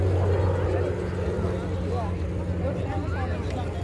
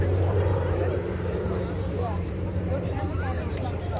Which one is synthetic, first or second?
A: second